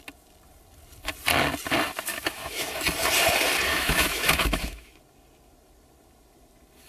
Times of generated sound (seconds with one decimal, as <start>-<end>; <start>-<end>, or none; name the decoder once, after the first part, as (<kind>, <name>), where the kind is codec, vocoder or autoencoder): 2.1-2.8 (autoencoder, DAC-VAE); 3.7-5.0